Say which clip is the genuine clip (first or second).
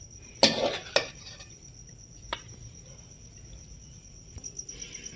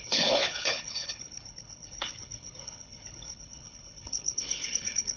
first